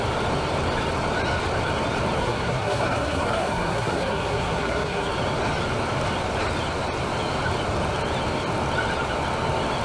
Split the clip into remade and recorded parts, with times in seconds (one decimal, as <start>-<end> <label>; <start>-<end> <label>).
0.0-2.2 recorded; 2.2-5.1 remade; 5.1-9.8 recorded